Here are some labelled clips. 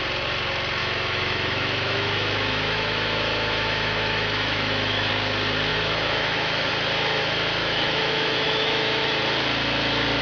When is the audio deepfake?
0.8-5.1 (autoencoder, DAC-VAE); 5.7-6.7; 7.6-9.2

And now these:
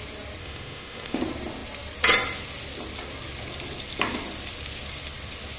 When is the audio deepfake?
0.4-1.2 (autoencoder, DAC-VAE)

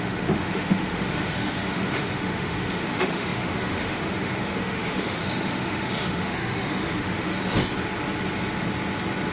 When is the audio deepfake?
0.0-7.3 (autoencoder, DAC-VAE)

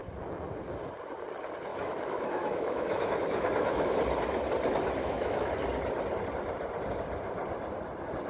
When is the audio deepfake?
1.7-4.0 (autoencoder, DAC-VAE); 5.0-5.5

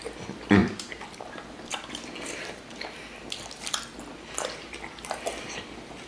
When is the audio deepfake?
none

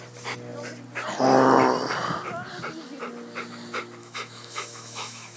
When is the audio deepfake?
4.0-5.4 (autoencoder, DAC-VAE)

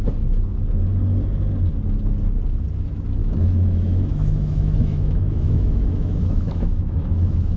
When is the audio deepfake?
3.2-7.6 (autoencoder, DAC-VAE)

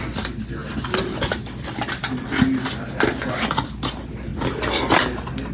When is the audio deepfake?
none